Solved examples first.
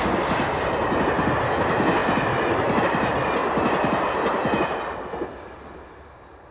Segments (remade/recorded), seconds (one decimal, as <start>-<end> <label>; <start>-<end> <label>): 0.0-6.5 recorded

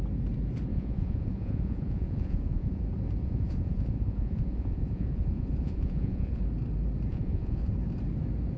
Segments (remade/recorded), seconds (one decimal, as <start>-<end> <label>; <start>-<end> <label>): 0.0-0.7 recorded; 0.7-2.8 remade; 2.8-3.2 recorded; 3.2-6.4 remade; 6.4-7.1 recorded; 7.1-7.7 remade; 7.7-8.6 recorded

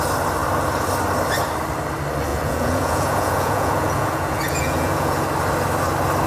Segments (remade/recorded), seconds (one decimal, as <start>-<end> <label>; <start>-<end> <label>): 0.0-2.3 recorded; 2.3-5.3 remade; 5.3-6.3 recorded